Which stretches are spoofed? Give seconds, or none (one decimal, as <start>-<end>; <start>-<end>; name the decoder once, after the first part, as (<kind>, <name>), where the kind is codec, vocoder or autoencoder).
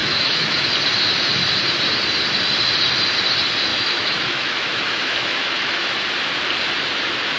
0.0-0.7 (autoencoder, DAC-VAE); 3.7-5.9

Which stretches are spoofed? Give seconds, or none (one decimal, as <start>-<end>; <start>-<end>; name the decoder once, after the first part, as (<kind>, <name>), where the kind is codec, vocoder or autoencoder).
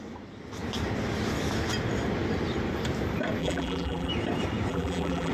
3.4-4.1 (vocoder, BigVGAN v2); 4.7-5.3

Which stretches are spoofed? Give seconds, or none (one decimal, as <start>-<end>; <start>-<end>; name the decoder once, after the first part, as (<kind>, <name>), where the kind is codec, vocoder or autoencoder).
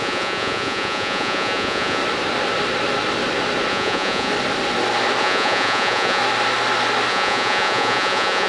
0.0-2.0 (vocoder, Vocos); 3.7-4.3; 5.2-6.2; 7.1-8.5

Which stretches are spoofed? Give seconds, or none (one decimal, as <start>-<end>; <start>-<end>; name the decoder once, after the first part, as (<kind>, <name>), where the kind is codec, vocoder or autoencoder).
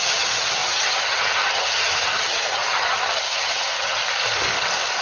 0.0-4.0 (vocoder, HiFi-GAN)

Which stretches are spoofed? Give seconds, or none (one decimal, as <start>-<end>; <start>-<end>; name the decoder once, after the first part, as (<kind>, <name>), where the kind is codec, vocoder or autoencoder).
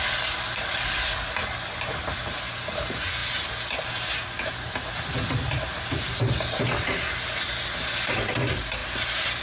none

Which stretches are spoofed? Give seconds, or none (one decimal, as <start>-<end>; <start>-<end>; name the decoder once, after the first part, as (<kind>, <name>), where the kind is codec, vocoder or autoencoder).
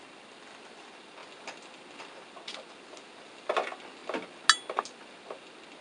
none